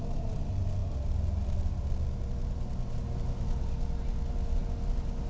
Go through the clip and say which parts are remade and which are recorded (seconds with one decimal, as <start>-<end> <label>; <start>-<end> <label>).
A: 0.0-5.3 recorded